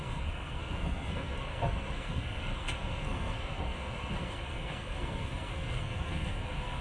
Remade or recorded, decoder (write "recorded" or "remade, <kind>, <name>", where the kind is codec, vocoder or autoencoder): remade, codec, SNAC